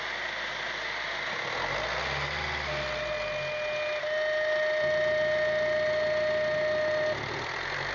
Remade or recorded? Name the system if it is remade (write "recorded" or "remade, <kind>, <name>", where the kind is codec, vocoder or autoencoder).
recorded